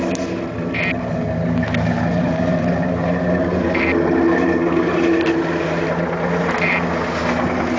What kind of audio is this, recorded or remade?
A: recorded